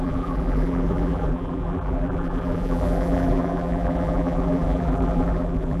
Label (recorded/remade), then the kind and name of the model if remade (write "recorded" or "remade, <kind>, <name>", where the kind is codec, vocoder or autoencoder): remade, vocoder, BigVGAN v2